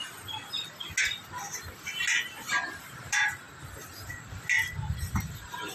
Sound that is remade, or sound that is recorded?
recorded